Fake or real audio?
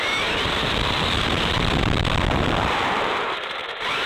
fake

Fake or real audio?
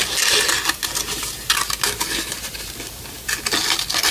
real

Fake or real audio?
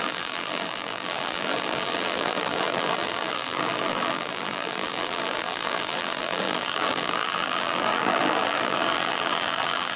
fake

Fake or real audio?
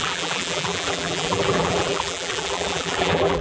fake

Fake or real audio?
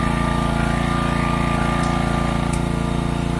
real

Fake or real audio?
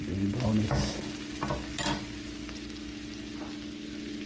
real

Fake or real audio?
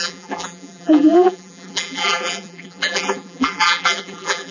fake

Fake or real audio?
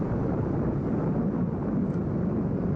real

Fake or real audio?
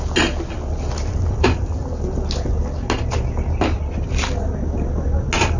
real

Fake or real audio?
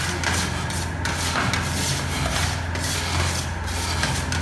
real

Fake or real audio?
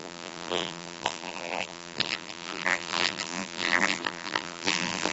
fake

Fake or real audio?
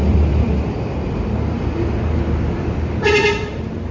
fake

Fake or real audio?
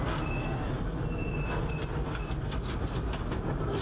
real